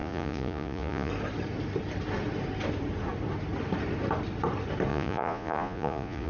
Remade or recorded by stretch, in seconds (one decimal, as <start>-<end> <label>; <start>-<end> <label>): 0.0-1.1 remade; 1.1-4.9 recorded; 4.9-6.3 remade